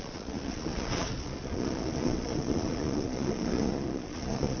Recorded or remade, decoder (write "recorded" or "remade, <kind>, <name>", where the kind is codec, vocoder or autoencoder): remade, vocoder, Vocos